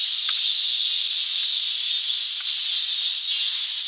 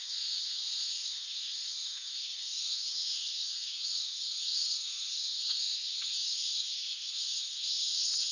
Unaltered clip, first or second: first